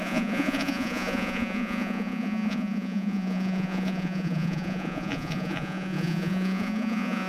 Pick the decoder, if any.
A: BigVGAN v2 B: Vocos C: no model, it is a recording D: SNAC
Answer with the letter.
B